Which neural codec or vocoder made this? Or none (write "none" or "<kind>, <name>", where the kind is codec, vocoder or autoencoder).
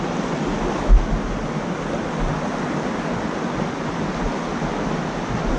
none